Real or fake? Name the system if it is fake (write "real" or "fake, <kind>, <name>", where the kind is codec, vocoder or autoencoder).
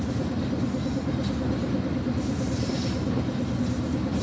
real